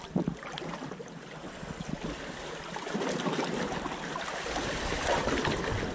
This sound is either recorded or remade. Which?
recorded